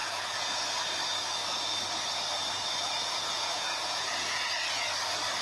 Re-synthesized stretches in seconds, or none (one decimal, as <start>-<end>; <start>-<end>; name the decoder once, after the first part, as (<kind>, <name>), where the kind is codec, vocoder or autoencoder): 0.0-0.6 (vocoder, Vocos); 3.0-4.5